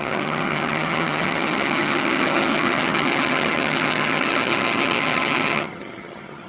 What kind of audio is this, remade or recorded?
remade